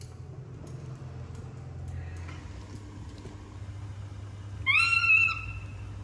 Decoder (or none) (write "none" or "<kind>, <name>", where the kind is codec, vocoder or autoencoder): none